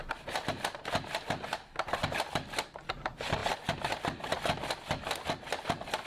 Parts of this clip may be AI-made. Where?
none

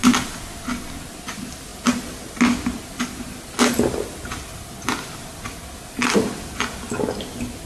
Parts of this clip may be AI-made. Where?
none

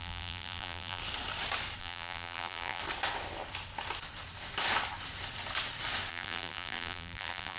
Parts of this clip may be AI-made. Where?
0.0-1.0 (vocoder, BigVGAN v2); 1.8-2.8; 6.1-7.6

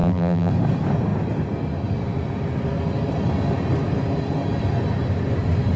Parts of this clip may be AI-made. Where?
0.0-0.5 (vocoder, BigVGAN v2)

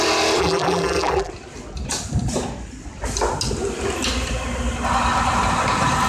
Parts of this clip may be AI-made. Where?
0.4-1.3 (vocoder, BigVGAN v2)

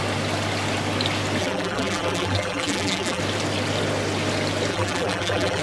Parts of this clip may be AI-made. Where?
1.4-3.2 (vocoder, BigVGAN v2); 4.7-5.6

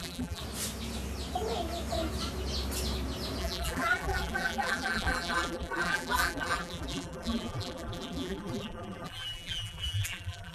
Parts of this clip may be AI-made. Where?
0.0-0.4 (vocoder, BigVGAN v2); 3.4-10.5